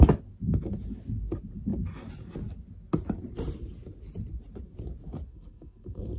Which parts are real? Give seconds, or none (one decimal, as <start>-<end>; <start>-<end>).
0.0-5.3